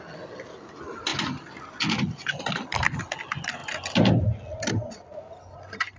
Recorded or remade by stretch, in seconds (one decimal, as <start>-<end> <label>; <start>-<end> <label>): 0.0-6.0 recorded